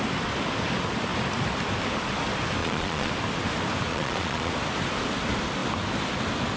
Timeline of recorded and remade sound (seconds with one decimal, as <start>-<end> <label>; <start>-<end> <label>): 0.0-2.6 recorded; 2.6-3.1 remade; 3.1-3.9 recorded; 3.9-4.5 remade; 4.5-6.6 recorded